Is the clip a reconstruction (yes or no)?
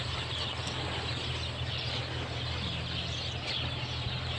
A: yes